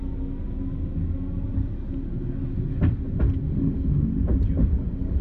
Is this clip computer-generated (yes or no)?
no